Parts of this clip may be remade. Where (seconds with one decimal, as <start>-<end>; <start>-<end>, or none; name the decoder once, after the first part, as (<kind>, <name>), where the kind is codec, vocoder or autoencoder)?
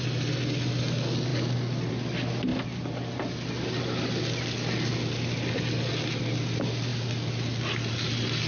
none